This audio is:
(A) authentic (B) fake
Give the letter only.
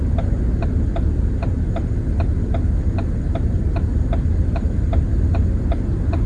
A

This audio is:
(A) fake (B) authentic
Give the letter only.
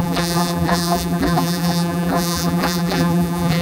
A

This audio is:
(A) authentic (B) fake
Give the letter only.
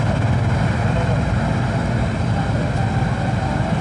A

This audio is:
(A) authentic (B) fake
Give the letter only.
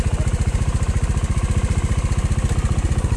A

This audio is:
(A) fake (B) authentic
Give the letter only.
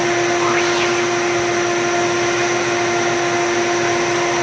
B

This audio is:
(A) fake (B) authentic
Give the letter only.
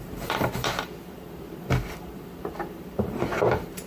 A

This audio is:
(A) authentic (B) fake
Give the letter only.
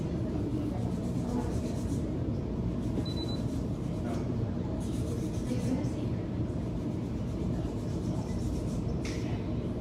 B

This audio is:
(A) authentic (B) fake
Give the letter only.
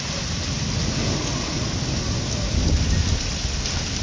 A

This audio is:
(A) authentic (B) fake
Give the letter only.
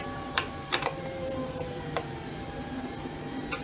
B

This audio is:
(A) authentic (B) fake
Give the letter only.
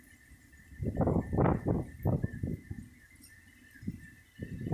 A